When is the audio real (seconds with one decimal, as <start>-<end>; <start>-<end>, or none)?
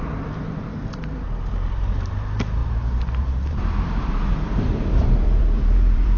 none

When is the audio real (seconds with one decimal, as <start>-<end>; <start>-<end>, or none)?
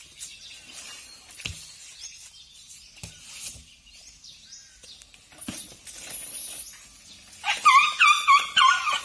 0.0-9.0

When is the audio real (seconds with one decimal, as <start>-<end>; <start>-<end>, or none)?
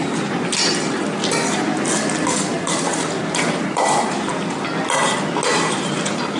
0.0-0.7; 1.7-2.5; 4.3-5.5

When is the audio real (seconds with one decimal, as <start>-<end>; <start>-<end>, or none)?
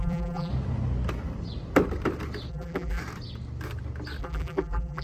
0.5-2.5; 3.0-4.2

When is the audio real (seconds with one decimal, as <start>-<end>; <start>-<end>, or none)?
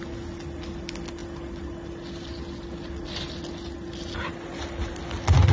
0.0-5.5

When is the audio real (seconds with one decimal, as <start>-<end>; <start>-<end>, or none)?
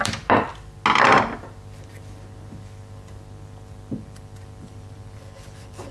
0.5-4.0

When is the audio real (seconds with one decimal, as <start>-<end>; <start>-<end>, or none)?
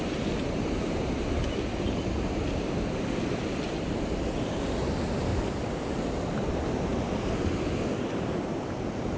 0.0-5.3; 5.9-6.9; 7.7-9.2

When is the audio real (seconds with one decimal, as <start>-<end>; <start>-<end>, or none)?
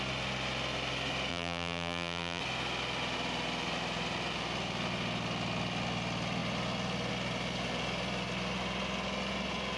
0.0-1.3; 2.4-9.8